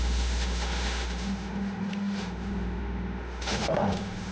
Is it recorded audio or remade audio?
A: remade